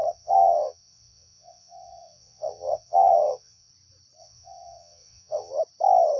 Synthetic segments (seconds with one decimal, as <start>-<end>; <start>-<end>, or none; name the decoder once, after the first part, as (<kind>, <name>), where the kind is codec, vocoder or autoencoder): 0.0-3.7 (vocoder, WaveNeXt); 4.2-5.5